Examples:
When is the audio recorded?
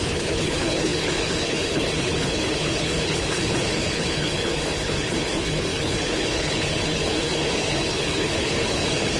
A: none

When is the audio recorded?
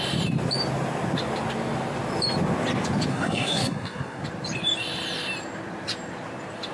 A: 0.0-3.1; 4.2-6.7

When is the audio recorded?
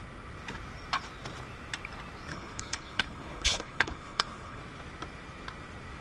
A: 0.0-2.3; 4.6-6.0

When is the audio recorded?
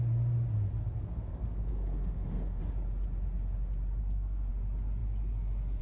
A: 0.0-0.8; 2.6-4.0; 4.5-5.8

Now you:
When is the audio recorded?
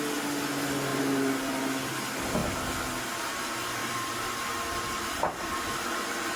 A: 0.0-0.9; 1.6-3.8